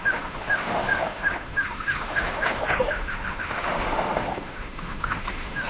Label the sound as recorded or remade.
remade